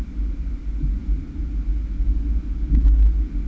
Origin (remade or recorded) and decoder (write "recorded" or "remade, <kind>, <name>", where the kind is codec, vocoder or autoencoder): recorded